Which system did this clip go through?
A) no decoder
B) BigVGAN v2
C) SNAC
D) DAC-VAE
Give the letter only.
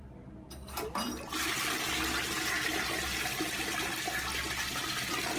A